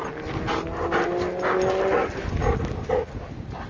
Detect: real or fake real